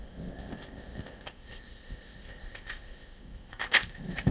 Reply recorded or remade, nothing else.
remade